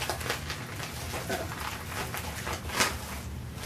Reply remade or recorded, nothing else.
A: recorded